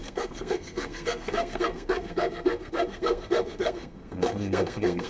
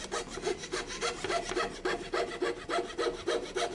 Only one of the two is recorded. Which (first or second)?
second